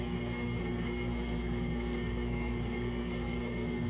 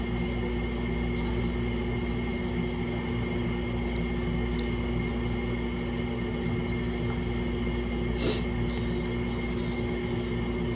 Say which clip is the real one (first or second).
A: second